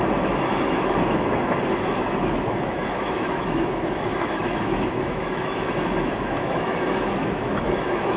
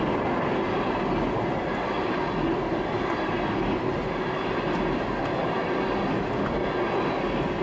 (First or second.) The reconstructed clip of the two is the first